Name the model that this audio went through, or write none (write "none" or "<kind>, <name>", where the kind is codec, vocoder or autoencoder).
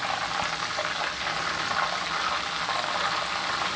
none